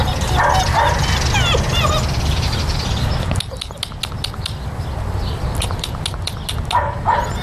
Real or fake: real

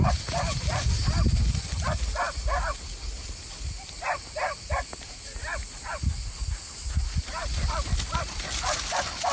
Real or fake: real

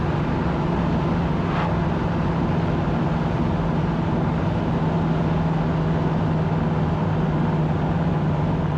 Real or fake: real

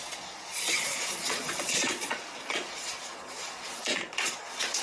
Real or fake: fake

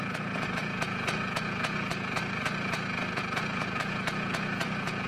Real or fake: fake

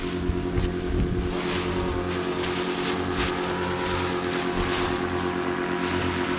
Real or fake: real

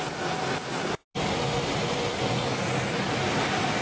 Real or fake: real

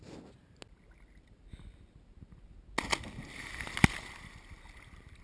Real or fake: real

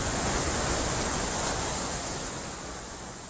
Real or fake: fake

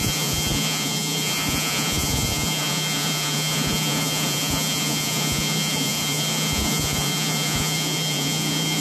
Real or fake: fake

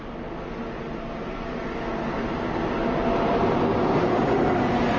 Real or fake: real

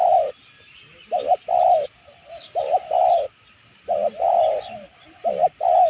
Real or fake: real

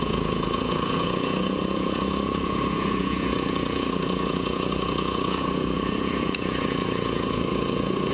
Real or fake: fake